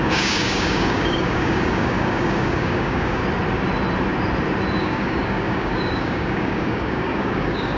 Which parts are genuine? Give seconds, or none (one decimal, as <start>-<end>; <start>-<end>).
3.2-4.8